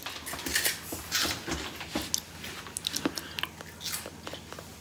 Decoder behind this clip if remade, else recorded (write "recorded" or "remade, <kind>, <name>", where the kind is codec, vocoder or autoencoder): recorded